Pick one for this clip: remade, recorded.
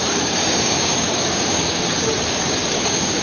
remade